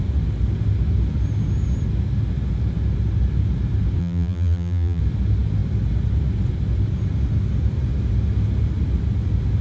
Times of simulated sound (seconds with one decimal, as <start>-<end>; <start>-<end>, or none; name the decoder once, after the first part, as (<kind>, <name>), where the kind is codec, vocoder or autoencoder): 4.0-5.0 (vocoder, BigVGAN v2)